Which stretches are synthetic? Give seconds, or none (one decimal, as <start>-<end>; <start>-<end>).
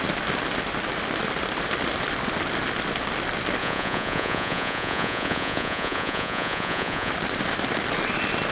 3.6-7.1